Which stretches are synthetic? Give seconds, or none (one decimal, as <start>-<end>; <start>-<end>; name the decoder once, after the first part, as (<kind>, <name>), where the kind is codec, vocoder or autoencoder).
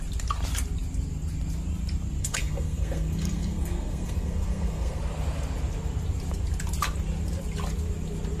2.2-5.0 (codec, SNAC)